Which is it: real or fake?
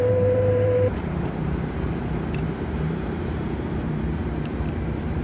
fake